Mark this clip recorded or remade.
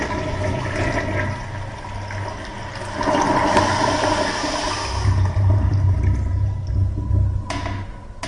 recorded